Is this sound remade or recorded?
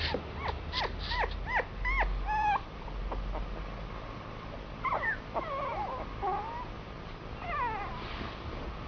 recorded